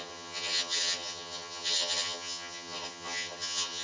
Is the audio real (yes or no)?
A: no